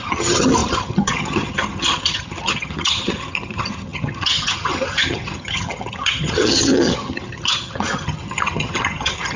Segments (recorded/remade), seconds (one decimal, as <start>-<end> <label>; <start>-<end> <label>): 0.0-9.4 remade